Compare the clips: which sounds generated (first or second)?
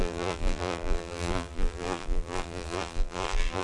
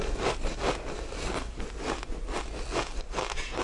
first